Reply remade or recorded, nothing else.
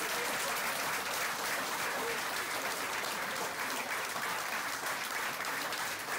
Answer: remade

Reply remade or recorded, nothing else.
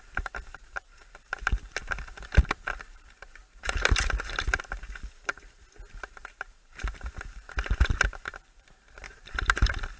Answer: remade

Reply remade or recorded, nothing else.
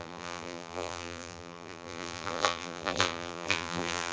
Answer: remade